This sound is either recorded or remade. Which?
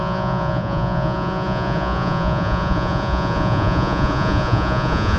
remade